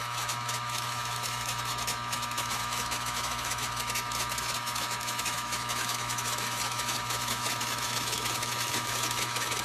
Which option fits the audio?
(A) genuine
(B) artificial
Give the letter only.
B